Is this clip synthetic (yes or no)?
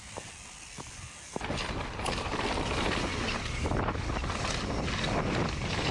no